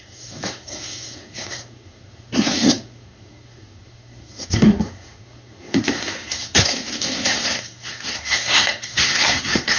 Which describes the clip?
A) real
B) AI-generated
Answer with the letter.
B